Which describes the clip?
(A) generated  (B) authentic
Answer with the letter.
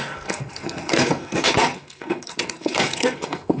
A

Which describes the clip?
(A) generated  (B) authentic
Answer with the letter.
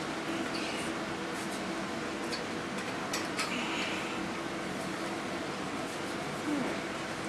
B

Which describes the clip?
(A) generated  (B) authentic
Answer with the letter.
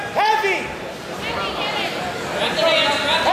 B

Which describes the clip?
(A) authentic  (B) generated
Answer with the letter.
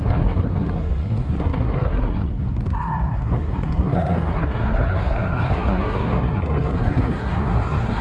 B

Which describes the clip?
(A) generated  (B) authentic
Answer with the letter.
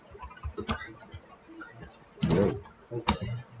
B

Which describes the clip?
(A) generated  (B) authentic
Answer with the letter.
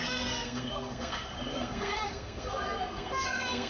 A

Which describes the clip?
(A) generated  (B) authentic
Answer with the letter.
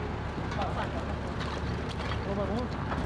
B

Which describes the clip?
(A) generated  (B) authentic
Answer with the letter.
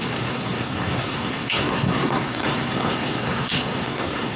A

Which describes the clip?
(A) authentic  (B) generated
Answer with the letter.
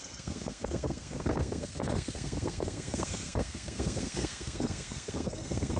B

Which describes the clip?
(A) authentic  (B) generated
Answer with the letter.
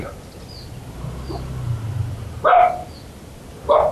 A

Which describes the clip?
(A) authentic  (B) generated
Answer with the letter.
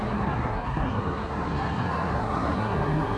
B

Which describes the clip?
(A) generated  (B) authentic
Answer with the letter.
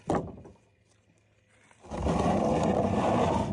B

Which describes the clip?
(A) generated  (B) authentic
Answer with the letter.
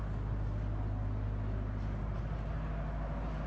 B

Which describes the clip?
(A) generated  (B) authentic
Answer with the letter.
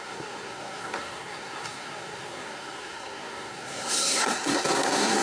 A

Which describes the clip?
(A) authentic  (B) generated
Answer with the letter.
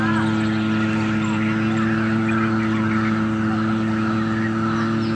A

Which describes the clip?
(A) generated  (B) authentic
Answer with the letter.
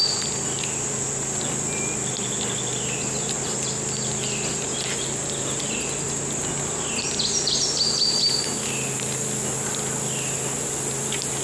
B